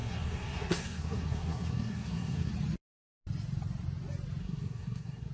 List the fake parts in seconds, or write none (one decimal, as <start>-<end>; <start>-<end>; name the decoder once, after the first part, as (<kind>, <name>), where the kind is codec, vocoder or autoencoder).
0.0-2.5 (codec, SNAC); 4.4-5.3